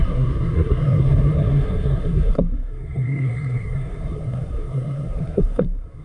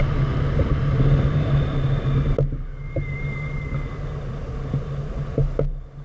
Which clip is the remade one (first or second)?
first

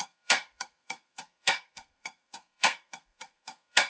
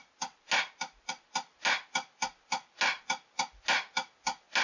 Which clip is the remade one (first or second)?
first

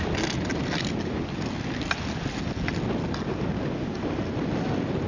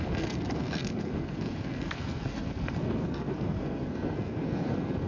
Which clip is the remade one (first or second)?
second